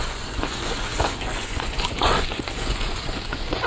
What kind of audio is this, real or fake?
fake